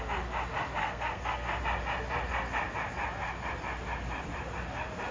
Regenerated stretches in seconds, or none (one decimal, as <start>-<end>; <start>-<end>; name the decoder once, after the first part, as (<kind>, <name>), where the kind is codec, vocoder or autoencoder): 0.8-1.6 (codec, SNAC)